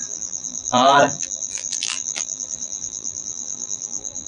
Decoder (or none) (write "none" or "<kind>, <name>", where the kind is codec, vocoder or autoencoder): vocoder, BigVGAN v2